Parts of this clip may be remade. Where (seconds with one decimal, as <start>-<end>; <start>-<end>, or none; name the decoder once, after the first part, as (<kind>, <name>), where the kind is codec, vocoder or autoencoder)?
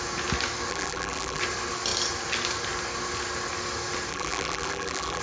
0.7-1.4 (vocoder, BigVGAN v2); 4.1-5.2